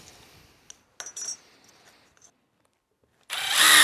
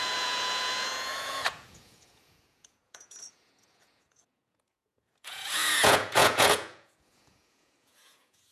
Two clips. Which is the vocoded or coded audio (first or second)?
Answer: second